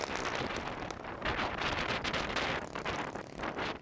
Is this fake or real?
real